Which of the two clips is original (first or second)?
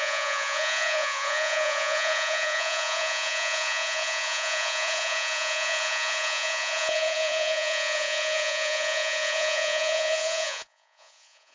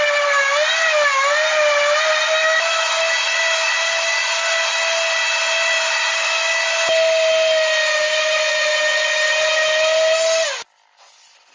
second